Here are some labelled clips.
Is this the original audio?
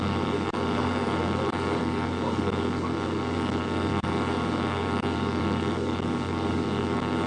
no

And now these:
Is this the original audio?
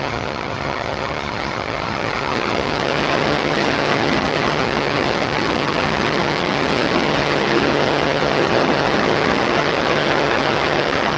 no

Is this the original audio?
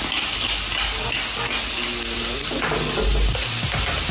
yes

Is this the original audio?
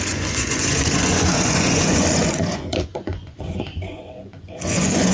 no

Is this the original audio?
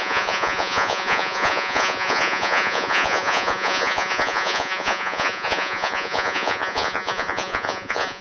no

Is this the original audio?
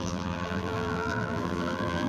no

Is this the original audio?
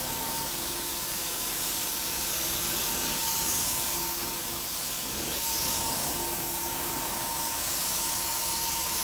no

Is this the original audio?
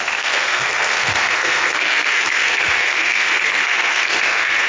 no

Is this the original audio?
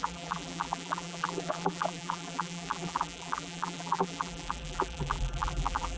no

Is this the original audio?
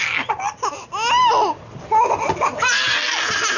yes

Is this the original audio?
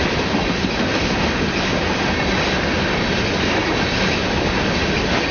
yes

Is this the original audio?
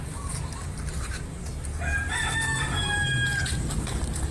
no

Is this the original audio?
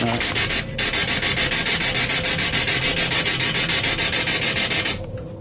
yes